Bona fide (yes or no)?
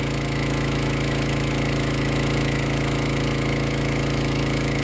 no